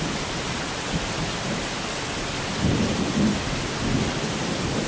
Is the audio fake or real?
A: real